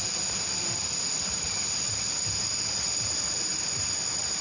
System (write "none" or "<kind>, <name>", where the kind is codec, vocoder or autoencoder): none